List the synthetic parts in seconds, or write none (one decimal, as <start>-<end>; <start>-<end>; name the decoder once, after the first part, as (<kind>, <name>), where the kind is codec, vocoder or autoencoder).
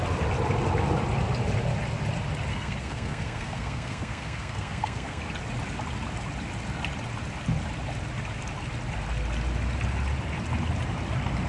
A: 2.5-5.2 (codec, SNAC)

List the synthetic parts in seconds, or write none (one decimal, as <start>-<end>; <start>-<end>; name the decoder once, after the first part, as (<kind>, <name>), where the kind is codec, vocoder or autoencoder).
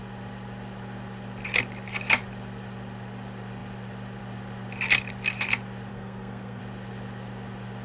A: 5.9-6.6 (codec, SNAC)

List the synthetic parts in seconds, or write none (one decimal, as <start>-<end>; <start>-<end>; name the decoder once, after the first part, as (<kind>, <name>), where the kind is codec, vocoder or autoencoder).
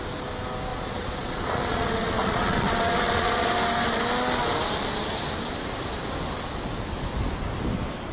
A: 0.7-3.5 (vocoder, Vocos)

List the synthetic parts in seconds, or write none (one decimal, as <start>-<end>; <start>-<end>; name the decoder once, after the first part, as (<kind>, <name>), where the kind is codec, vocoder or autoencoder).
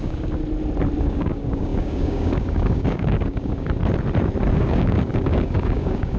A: 0.0-0.4 (codec, DAC); 1.0-3.8; 4.5-6.2